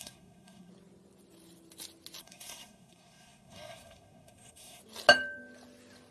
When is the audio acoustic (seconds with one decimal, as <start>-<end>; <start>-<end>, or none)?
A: 0.7-2.2; 4.8-6.1